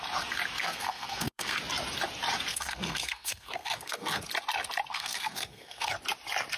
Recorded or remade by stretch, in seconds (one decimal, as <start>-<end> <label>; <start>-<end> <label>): 0.0-0.6 recorded; 0.6-1.6 remade; 1.6-2.5 recorded; 2.5-4.3 remade; 4.3-4.9 recorded; 4.9-5.9 remade; 5.9-6.6 recorded